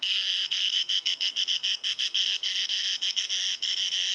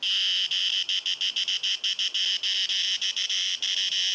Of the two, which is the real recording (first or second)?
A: second